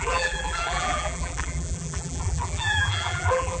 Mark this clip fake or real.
fake